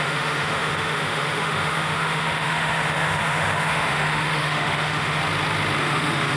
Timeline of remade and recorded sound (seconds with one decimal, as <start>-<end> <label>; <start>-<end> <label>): 0.0-5.2 remade; 5.2-5.8 recorded; 5.8-6.4 remade